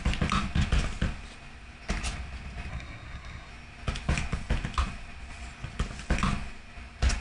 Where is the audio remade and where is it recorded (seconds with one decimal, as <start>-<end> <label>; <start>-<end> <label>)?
0.0-2.7 recorded; 2.7-3.5 remade; 3.5-7.2 recorded